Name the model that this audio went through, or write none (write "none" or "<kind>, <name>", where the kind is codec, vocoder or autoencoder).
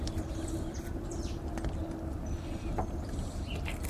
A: none